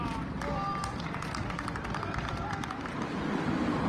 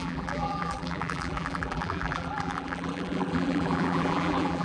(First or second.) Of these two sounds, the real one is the first